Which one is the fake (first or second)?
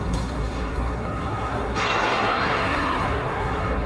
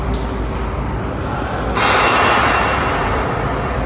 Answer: first